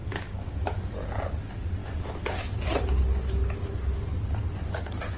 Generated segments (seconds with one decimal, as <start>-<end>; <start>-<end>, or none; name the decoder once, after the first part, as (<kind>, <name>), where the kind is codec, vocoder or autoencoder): 0.0-0.8 (codec, DAC)